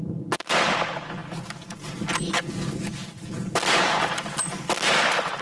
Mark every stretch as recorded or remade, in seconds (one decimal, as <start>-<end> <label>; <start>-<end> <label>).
0.0-5.4 recorded